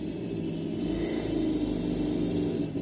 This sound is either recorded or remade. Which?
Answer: recorded